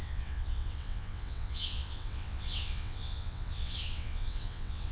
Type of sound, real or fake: fake